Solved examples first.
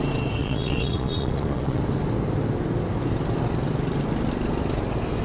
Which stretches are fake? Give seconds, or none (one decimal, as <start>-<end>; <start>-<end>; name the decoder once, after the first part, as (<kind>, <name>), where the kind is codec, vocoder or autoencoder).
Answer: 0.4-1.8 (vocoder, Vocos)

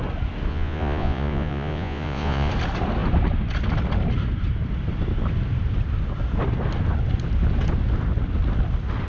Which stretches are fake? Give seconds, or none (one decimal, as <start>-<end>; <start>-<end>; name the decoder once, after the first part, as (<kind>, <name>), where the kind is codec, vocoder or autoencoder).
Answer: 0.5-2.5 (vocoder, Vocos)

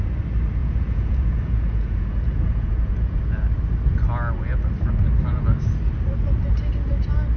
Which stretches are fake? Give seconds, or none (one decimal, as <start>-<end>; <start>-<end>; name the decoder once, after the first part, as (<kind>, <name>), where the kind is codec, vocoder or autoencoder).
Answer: 0.6-3.2 (vocoder, Vocos)

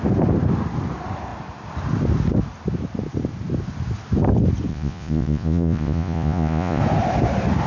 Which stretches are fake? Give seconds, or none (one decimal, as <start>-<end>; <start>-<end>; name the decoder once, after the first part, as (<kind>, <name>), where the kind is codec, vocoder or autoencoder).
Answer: 4.7-6.8 (vocoder, Vocos)

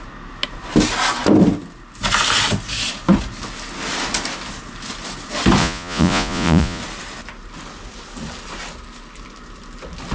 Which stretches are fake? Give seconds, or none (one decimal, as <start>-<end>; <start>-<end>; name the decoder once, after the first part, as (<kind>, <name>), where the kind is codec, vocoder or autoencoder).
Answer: 5.6-6.8 (vocoder, Vocos)

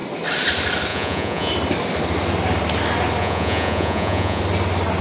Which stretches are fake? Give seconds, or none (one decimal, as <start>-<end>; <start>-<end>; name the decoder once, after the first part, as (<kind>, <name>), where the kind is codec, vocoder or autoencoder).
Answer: 0.9-1.5 (vocoder, Vocos); 3.2-4.4

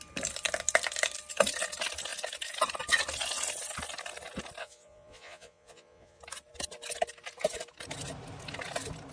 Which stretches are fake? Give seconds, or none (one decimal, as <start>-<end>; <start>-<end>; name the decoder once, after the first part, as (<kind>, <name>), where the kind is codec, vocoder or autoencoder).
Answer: 4.6-6.2 (vocoder, Vocos)

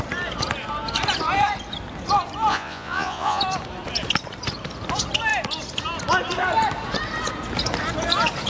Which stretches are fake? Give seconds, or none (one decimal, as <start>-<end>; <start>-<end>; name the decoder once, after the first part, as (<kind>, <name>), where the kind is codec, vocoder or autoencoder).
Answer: 2.5-3.4 (vocoder, Vocos)